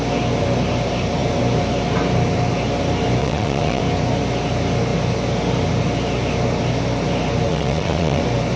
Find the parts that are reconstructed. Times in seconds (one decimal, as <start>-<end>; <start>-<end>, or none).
3.2-3.8; 7.5-8.2